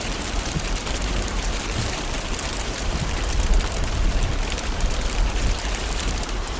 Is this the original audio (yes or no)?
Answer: no